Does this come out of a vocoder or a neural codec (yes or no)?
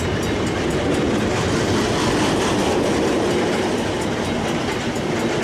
no